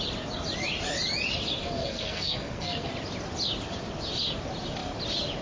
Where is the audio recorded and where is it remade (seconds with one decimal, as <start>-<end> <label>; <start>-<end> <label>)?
0.0-1.6 recorded; 1.6-2.9 remade; 2.9-5.4 recorded